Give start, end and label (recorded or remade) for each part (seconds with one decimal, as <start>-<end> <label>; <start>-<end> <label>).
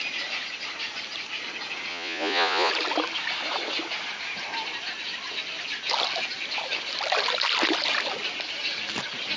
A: 0.0-1.9 recorded; 1.9-2.7 remade; 2.7-9.4 recorded